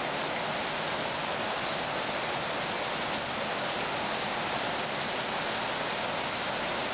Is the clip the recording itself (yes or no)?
yes